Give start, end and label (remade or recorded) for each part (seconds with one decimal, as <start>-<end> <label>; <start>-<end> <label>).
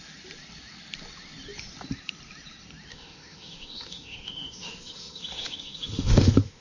0.0-2.9 recorded; 2.9-6.6 remade